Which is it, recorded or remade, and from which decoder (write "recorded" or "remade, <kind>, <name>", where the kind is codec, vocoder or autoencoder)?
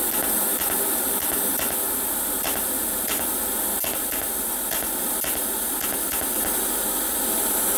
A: recorded